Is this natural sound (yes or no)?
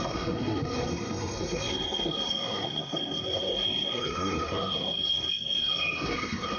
no